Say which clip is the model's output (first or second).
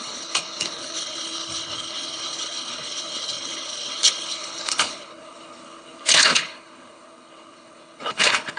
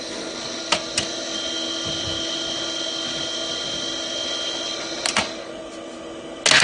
first